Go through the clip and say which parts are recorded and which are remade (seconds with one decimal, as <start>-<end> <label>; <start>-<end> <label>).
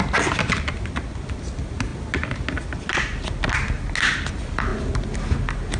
0.0-5.8 recorded